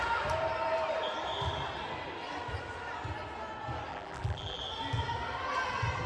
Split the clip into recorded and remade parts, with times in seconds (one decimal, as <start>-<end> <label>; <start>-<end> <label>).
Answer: 0.0-3.9 recorded; 3.9-4.6 remade; 4.6-6.1 recorded